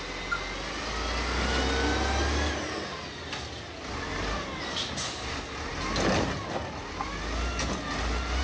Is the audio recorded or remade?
recorded